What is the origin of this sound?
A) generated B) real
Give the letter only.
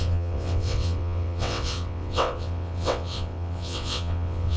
A